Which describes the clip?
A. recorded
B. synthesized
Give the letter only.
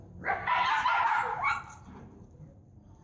B